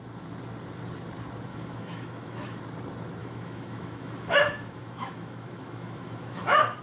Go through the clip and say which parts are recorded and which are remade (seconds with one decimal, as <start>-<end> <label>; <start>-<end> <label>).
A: 0.0-1.5 recorded; 1.5-2.6 remade; 2.6-3.2 recorded; 3.2-6.8 remade